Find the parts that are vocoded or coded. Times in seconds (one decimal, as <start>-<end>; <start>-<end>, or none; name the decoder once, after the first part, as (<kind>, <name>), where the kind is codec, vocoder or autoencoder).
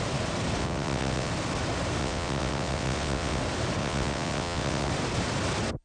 0.6-1.3 (vocoder, WaveNeXt); 2.0-3.4; 3.8-4.9